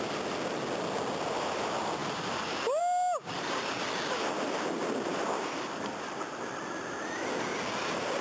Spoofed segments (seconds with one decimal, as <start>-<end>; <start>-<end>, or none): 2.0-2.8; 4.8-6.5

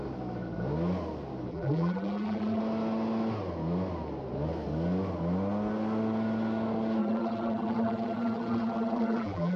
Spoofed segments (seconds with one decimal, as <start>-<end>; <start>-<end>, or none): 1.5-2.6; 7.0-9.6

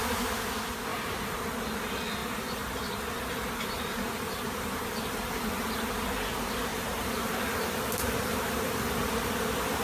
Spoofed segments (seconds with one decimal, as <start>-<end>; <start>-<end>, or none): 0.9-1.5; 2.2-5.9; 6.7-9.1

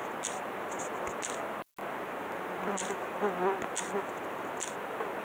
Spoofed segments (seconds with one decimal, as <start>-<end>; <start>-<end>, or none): none

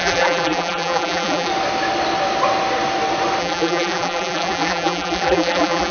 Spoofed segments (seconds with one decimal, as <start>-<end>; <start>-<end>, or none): 0.0-1.5; 3.4-5.9

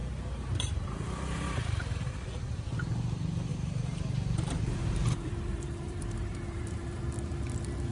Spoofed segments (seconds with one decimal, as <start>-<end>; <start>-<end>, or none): 0.0-2.1; 3.5-7.0

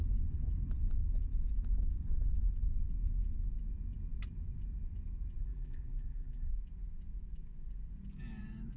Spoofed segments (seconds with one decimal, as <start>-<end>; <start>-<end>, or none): 5.4-6.5

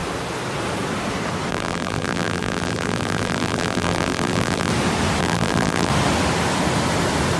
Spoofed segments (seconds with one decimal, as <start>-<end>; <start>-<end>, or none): 1.5-4.7; 5.2-5.9